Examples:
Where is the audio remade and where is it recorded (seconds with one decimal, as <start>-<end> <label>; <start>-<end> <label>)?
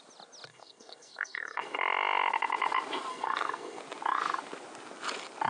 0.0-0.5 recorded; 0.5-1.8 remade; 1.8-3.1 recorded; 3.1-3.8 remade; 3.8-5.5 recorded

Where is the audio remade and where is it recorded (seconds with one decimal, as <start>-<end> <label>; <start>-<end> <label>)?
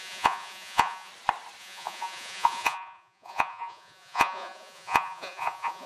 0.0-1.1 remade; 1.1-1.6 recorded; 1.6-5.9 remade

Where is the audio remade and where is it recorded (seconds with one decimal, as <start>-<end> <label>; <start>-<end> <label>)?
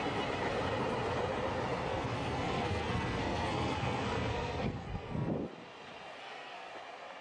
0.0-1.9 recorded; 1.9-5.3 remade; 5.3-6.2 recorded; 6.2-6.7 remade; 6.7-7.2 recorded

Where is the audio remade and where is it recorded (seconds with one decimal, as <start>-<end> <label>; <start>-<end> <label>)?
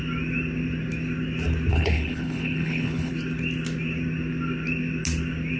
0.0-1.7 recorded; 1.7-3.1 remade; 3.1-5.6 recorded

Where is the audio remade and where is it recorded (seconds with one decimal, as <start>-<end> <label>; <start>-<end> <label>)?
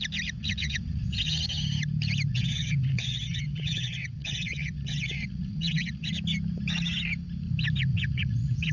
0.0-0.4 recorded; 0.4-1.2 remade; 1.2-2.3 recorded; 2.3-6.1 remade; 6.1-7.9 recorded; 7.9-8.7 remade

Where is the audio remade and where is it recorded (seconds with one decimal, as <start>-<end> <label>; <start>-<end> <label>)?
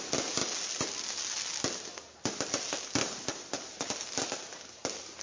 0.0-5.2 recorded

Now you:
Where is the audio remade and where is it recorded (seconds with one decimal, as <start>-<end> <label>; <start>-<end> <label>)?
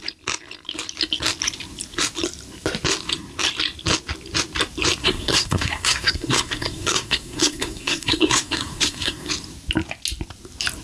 0.0-5.0 recorded; 5.0-9.3 remade; 9.3-10.8 recorded